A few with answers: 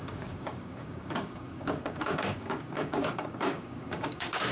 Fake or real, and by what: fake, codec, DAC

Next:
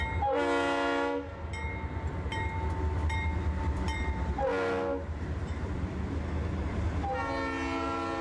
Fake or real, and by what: real